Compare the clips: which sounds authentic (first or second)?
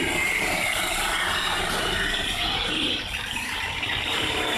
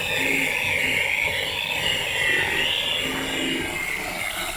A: second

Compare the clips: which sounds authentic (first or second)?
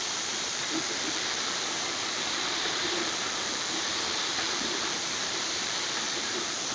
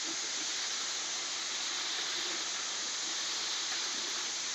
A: second